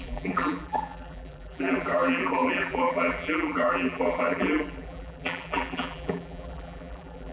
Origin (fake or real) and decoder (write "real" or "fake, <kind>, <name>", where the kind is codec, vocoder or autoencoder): fake, vocoder, BigVGAN v2